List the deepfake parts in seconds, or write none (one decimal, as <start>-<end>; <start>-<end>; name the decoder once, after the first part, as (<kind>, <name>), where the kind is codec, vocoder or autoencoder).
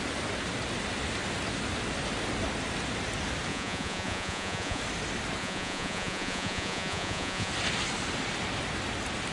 3.5-4.8 (vocoder, Vocos); 5.4-7.5